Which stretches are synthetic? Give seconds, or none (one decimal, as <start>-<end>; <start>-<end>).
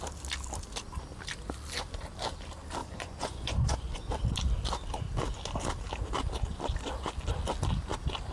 2.8-4.1